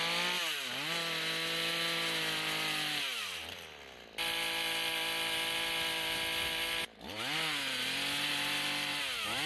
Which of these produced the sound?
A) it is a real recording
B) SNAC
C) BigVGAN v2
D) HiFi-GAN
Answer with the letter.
A